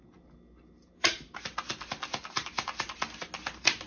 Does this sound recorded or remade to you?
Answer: recorded